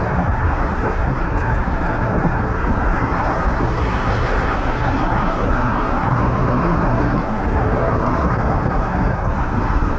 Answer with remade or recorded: remade